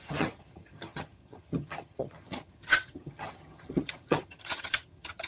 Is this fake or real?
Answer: fake